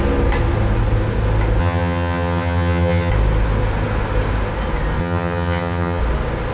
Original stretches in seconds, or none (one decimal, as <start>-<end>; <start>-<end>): 0.0-1.6; 3.1-5.0; 6.0-6.5

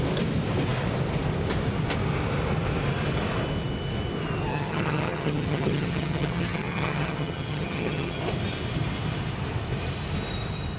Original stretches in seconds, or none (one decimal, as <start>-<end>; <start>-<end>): 0.0-4.5; 8.2-10.8

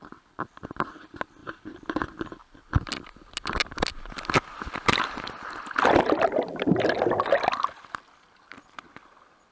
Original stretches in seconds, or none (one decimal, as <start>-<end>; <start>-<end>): 0.0-9.5

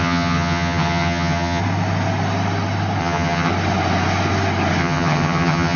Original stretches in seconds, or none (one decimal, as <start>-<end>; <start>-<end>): 1.6-3.0; 3.5-4.8

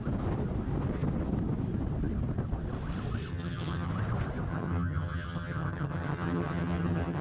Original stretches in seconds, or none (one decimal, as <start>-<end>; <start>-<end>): 0.0-3.3; 3.9-4.5